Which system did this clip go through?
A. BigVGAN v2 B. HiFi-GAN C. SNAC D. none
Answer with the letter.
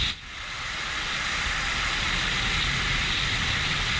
D